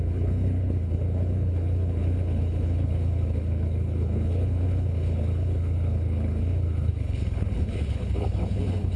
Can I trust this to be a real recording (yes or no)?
no